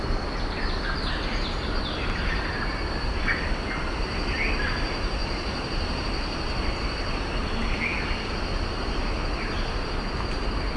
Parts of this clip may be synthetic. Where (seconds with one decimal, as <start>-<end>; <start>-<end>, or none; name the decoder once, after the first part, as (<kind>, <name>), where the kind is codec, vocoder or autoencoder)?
5.2-8.0 (vocoder, BigVGAN v2); 8.5-9.9